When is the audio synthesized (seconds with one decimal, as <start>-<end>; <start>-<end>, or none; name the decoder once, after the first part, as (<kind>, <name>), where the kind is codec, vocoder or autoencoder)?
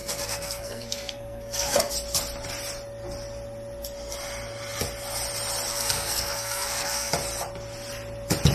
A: 0.0-1.9 (codec, SNAC); 5.7-7.1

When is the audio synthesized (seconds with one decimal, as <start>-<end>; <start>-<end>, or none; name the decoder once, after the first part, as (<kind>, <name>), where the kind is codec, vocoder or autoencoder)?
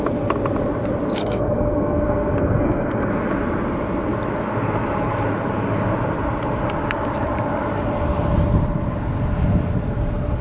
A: 1.2-3.1 (codec, SNAC)